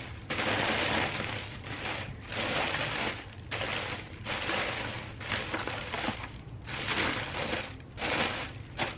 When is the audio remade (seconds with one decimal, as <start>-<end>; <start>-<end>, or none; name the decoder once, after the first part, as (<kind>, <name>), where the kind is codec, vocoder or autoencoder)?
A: none